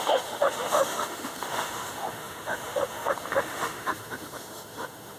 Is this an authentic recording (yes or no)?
no